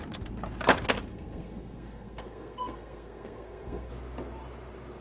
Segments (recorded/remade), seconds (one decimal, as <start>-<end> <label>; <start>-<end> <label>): 0.0-1.1 recorded; 1.1-3.9 remade; 3.9-5.0 recorded